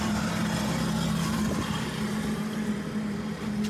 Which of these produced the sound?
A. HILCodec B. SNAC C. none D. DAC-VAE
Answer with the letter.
C